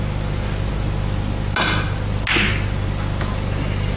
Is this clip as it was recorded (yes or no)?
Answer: yes